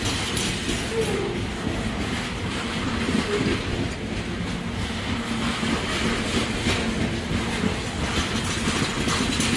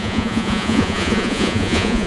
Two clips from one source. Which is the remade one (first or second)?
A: second